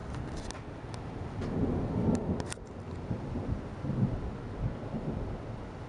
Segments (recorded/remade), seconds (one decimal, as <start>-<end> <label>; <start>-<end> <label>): 0.0-5.9 recorded